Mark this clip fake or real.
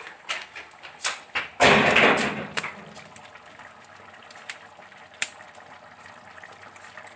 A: fake